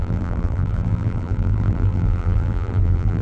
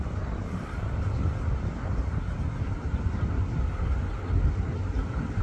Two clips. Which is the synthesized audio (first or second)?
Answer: first